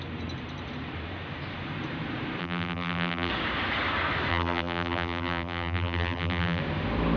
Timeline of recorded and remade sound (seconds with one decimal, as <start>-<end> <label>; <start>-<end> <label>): 0.0-2.4 recorded; 2.4-3.3 remade; 3.3-4.3 recorded; 4.3-6.6 remade; 6.6-7.2 recorded